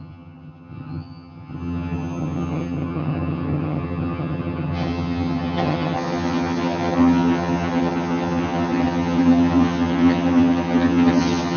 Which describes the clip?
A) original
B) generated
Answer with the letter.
B